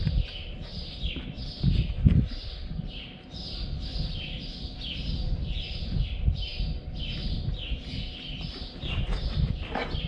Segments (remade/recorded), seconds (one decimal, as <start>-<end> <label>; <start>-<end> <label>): 0.0-6.5 remade; 6.5-8.8 recorded; 8.8-10.1 remade